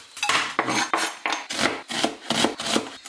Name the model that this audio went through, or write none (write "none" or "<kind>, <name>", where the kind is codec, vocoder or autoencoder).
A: none